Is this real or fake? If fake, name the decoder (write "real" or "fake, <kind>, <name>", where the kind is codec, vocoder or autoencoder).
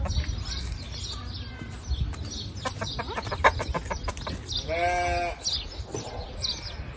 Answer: real